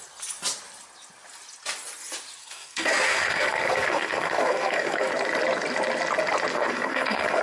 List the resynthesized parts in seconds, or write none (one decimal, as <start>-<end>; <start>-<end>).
2.4-5.1; 6.5-7.4